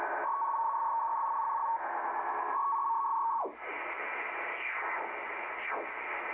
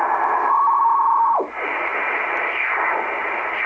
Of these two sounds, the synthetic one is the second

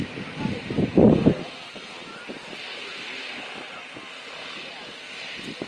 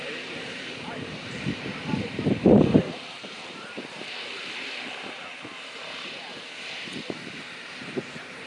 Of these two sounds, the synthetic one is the second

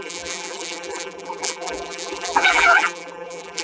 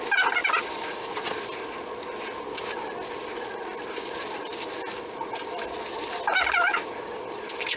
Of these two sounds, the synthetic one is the first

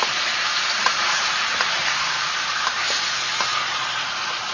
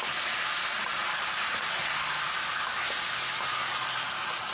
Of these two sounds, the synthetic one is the first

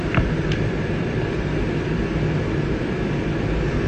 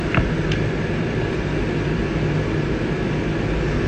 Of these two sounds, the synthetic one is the first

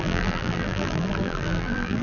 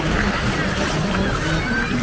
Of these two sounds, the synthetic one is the first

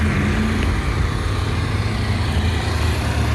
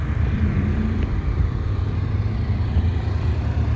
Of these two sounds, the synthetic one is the second